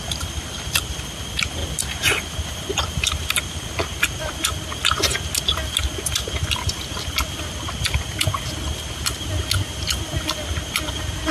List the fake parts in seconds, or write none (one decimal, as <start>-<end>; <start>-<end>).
none